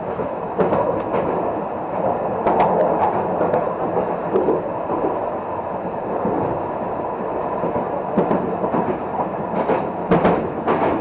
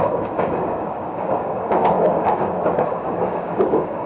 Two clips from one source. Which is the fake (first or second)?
second